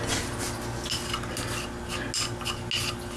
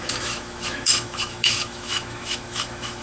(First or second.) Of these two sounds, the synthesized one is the second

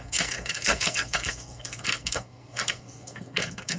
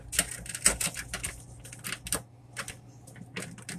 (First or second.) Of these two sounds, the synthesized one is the first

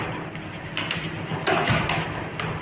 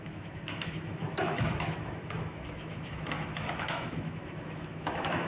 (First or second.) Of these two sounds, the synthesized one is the second